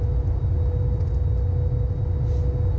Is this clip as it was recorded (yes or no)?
yes